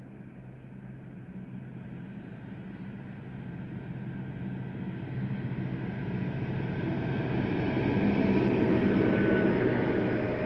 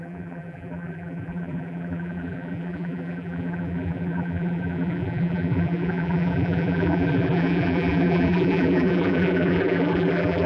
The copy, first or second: second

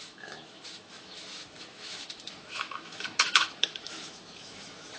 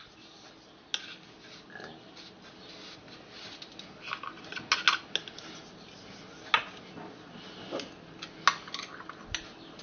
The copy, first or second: first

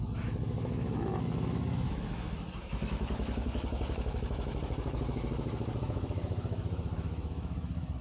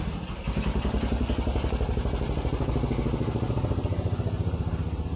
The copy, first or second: first